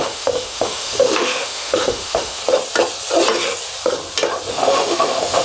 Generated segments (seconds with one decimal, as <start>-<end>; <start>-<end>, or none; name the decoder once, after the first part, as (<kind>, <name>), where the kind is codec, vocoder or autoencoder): 0.0-2.4 (autoencoder, DAC-VAE); 4.5-5.4